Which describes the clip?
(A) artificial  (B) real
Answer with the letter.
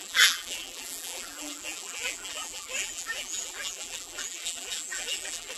A